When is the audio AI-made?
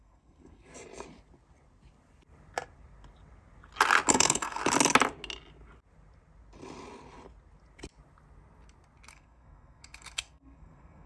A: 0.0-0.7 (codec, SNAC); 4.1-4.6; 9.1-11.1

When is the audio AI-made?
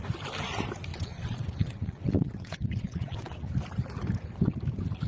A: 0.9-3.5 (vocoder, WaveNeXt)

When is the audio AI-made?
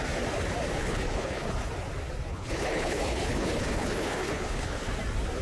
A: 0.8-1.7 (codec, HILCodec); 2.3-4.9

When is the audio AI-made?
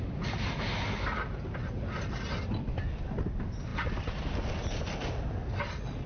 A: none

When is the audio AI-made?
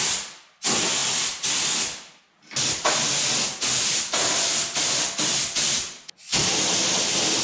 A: none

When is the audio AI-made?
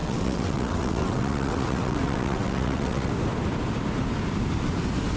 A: 0.0-3.1 (vocoder, WaveNeXt)